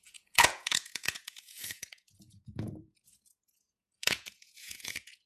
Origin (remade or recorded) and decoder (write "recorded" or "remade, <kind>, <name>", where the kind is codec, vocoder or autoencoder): remade, vocoder, Vocos